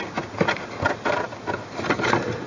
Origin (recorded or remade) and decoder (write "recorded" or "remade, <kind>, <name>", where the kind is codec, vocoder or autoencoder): recorded